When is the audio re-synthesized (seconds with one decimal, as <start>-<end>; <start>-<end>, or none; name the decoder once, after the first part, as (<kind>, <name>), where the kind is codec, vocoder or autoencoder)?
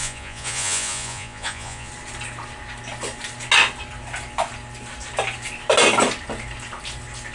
0.0-1.9 (vocoder, Vocos)